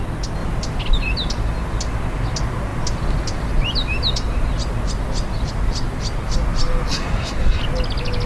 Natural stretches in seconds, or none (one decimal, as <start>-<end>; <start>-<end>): 0.0-6.9; 7.6-8.3